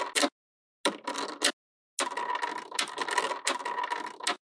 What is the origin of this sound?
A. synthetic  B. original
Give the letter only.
B